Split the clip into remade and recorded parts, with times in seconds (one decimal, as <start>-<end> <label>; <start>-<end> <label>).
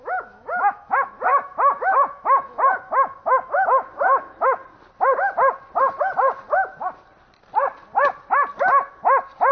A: 0.0-4.6 remade; 4.6-9.5 recorded